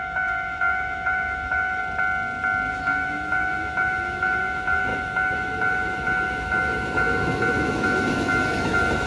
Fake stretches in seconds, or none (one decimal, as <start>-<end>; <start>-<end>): 0.0-1.8; 2.7-9.1